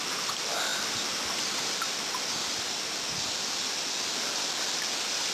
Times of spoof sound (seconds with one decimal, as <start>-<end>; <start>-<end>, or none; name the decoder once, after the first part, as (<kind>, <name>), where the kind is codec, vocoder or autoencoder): none